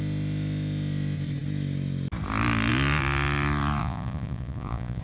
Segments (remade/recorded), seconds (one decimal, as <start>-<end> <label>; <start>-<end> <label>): 0.0-3.8 recorded; 3.8-5.0 remade